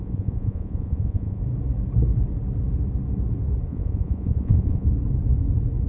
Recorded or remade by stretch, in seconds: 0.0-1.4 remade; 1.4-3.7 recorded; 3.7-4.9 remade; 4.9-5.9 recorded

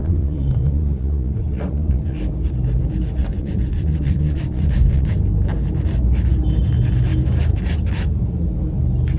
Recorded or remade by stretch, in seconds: 0.0-2.2 remade; 2.2-3.2 recorded; 3.2-5.1 remade; 5.1-9.2 recorded

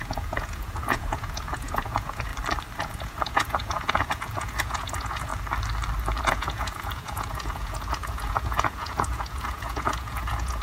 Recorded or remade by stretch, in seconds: 0.0-2.3 remade; 2.3-2.8 recorded; 2.8-5.3 remade; 5.3-6.2 recorded; 6.2-10.6 remade

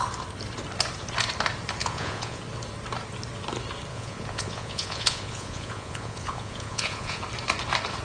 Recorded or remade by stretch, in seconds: 0.0-1.8 recorded; 1.8-2.4 remade; 2.4-3.9 recorded; 3.9-7.2 remade; 7.2-8.0 recorded

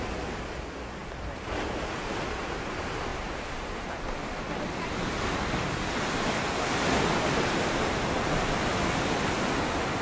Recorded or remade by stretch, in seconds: 0.0-10.0 recorded